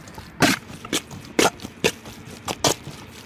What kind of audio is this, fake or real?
real